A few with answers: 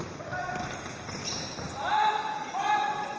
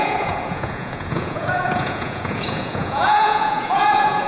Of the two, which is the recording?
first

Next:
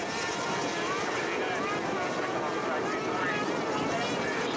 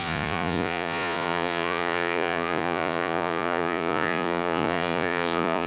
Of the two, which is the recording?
first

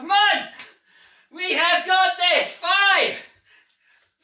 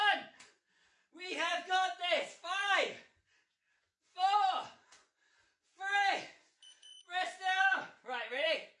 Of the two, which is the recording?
first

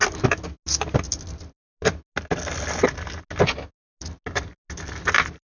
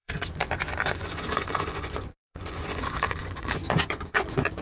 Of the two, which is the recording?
first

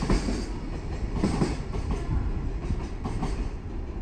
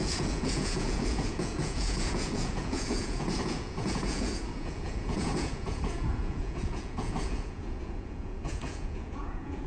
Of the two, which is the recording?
first